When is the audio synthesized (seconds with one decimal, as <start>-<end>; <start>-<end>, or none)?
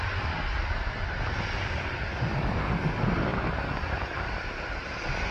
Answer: 3.3-5.3